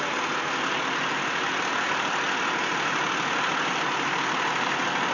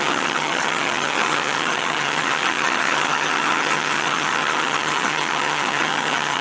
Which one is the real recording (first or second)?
first